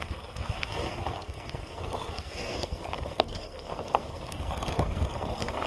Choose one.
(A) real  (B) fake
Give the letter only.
B